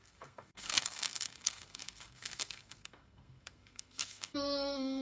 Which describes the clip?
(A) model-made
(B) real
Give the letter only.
A